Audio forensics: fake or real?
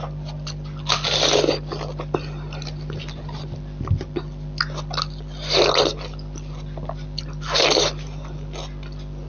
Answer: real